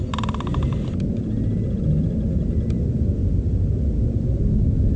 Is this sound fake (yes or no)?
no